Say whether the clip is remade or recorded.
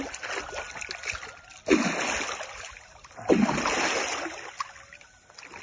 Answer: recorded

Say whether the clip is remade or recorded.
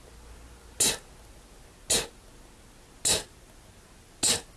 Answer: recorded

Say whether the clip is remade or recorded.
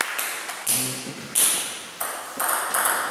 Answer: recorded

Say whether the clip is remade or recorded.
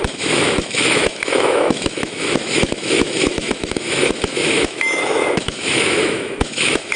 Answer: remade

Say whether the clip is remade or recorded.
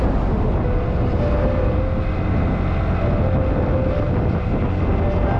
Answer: recorded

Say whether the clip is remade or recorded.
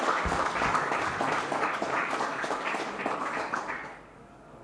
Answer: remade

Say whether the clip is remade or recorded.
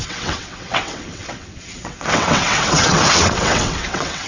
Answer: remade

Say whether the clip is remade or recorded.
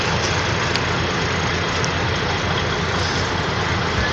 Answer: recorded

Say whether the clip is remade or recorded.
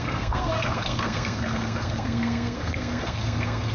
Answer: remade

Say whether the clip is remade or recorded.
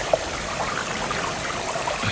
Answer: recorded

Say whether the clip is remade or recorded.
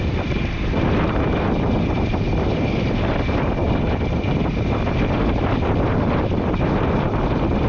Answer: recorded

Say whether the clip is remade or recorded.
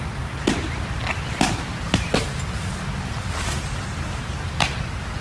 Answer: recorded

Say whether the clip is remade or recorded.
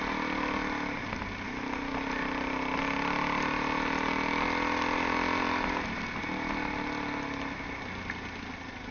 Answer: recorded